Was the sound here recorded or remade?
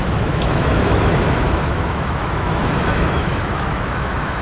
remade